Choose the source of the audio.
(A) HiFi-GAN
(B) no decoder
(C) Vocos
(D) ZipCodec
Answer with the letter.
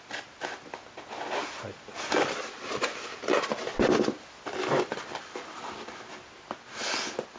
B